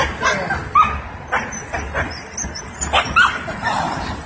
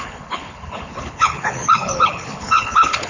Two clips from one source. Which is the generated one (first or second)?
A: second